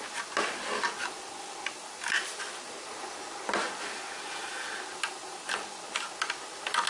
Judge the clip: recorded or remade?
recorded